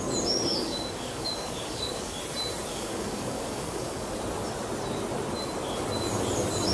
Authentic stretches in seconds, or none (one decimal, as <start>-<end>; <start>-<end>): 0.0-0.5; 2.2-2.7; 4.1-6.7